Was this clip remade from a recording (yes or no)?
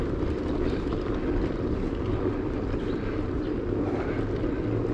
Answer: no